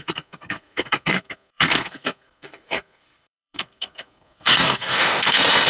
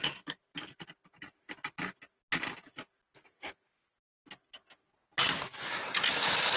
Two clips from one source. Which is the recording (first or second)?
second